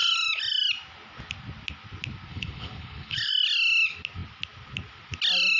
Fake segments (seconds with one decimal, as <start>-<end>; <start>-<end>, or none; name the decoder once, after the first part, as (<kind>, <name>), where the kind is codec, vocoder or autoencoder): 2.3-3.3 (codec, HILCodec)